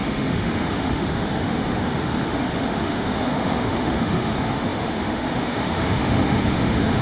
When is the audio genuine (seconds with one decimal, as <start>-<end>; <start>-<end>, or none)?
none